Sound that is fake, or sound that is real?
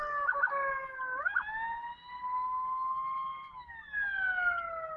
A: real